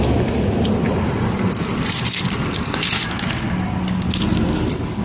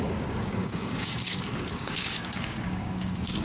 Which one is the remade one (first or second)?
second